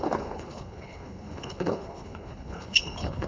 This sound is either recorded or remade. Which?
remade